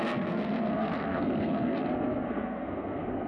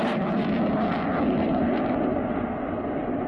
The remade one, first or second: first